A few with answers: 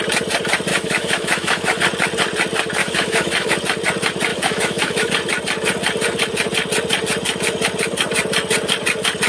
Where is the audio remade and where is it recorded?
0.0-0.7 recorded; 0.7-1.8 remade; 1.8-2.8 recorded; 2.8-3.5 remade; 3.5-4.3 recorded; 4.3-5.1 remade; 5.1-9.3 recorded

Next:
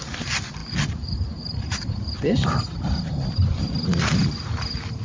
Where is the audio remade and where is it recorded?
0.0-5.0 remade

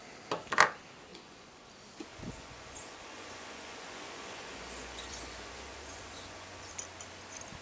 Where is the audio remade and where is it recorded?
0.0-1.1 recorded; 1.1-1.7 remade; 1.7-2.1 recorded; 2.1-6.7 remade; 6.7-7.6 recorded

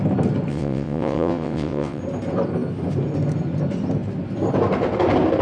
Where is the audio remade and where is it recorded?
0.0-0.5 recorded; 0.5-2.0 remade; 2.0-5.4 recorded

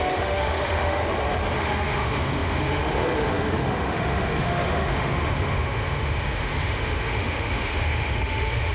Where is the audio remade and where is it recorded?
0.0-1.0 remade; 1.0-1.6 recorded; 1.6-8.7 remade